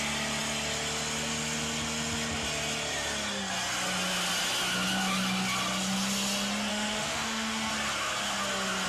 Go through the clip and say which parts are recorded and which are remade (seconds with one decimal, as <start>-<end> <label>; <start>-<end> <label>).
0.0-6.7 recorded; 6.7-7.7 remade; 7.7-8.9 recorded